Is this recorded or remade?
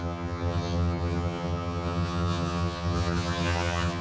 remade